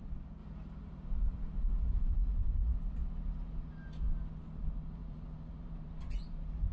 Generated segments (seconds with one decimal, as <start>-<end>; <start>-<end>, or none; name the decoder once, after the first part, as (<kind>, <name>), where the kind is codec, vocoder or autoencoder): 0.0-3.0 (vocoder, BigVGAN v2); 4.6-6.7